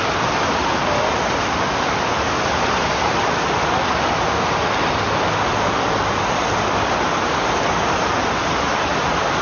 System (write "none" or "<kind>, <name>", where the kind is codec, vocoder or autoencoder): none